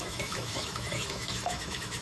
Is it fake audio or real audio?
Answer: fake